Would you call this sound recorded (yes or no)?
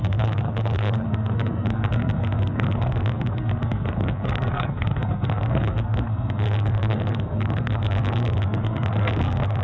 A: no